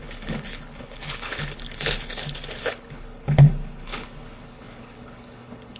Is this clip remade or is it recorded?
remade